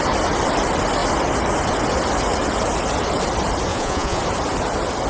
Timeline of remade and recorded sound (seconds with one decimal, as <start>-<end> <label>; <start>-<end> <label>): 0.0-3.7 recorded; 3.7-4.2 remade; 4.2-5.1 recorded